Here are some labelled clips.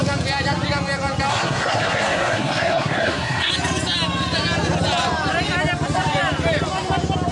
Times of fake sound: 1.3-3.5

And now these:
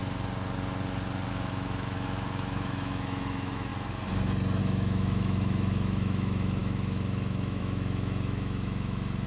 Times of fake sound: 1.3-3.7; 4.6-9.3

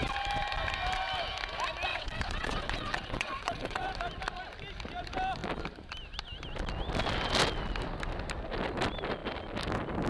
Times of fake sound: 1.9-3.9

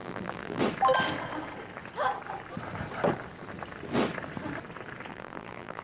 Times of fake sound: 0.0-0.6; 5.1-5.8

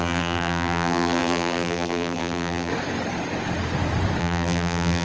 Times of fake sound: 0.0-2.7; 4.2-5.0